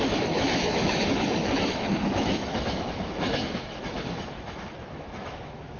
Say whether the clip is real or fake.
fake